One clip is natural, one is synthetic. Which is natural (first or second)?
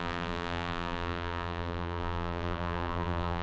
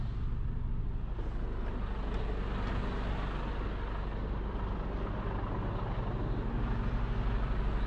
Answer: second